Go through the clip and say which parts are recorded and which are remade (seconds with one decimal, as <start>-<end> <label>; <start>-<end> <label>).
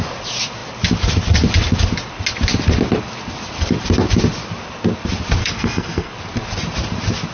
0.0-5.4 recorded; 5.4-6.1 remade; 6.1-7.3 recorded